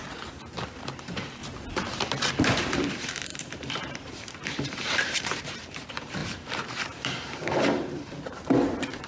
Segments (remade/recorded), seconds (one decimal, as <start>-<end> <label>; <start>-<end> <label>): 0.0-1.4 remade; 1.4-2.4 recorded; 2.4-9.1 remade